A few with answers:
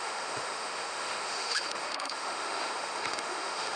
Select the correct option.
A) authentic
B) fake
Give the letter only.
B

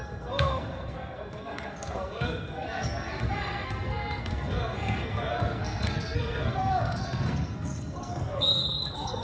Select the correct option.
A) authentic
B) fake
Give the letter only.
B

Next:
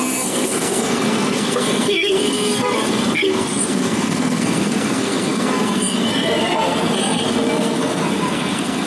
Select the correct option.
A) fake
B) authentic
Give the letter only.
A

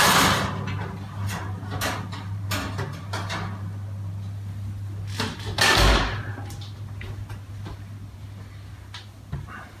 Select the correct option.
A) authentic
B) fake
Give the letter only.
A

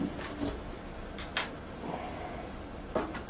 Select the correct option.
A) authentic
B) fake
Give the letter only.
A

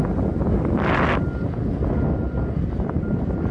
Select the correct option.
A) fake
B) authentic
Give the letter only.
B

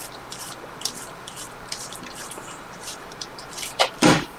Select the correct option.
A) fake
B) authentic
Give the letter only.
A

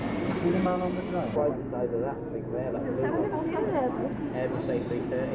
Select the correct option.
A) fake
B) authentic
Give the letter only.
B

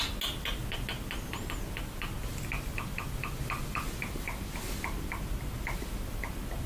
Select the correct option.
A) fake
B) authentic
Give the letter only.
B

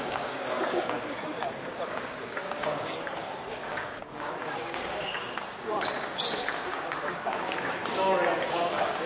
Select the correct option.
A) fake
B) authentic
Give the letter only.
A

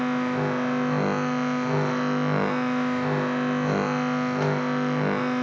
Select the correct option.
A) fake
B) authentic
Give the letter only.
A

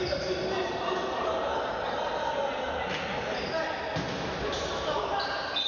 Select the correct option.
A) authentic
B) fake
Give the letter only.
A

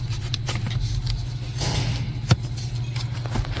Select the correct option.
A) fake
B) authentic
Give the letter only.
B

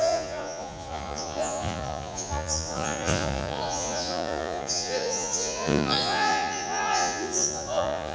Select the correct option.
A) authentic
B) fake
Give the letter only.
B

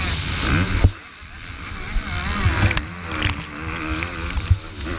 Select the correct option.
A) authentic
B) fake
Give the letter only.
A